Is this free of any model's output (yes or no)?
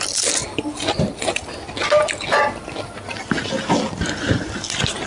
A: yes